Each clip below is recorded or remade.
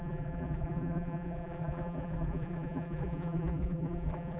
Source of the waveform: remade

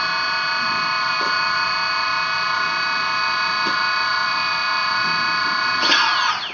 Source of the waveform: recorded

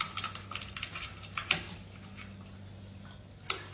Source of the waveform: recorded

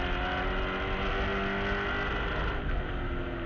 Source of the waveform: recorded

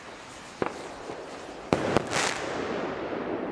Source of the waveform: recorded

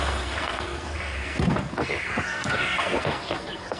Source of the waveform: remade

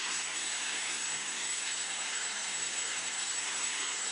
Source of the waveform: remade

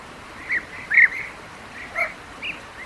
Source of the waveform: recorded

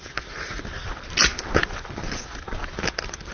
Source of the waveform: recorded